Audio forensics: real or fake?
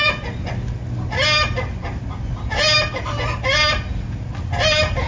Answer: real